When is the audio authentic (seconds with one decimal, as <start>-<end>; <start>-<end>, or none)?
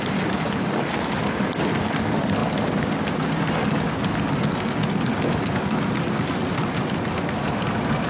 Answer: 2.4-6.7